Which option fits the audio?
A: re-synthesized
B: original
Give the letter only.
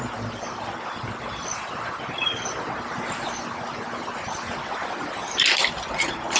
B